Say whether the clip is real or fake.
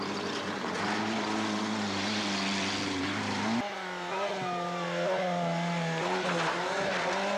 real